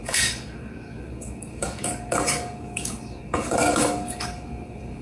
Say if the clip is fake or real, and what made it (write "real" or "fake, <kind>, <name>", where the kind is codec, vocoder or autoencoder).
fake, codec, DAC